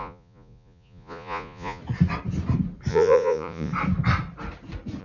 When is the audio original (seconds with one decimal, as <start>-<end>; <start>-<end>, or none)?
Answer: 1.8-2.9; 3.7-5.0